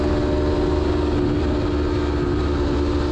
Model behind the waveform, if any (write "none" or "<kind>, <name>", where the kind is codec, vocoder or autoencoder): none